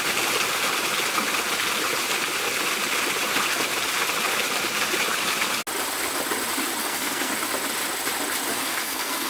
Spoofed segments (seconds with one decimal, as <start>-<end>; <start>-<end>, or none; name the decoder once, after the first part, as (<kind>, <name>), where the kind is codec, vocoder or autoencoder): 6.8-7.3 (codec, SNAC); 8.5-9.3

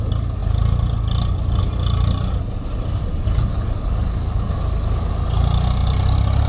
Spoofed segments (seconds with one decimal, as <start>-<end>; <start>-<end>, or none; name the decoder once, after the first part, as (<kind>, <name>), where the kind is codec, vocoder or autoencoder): 3.5-5.1 (codec, DAC)